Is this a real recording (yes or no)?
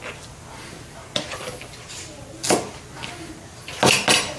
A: yes